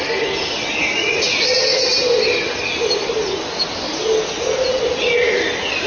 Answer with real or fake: real